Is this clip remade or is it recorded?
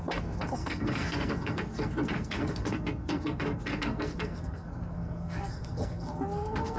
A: remade